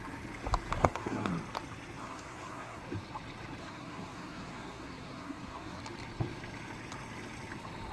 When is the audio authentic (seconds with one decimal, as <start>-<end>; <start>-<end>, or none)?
0.0-0.8; 1.3-2.0; 2.8-3.6; 5.8-7.9